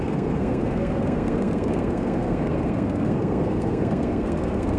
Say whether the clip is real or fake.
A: fake